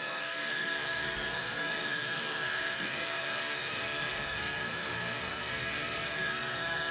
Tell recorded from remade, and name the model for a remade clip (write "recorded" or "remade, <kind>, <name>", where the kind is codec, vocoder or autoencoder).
remade, codec, SNAC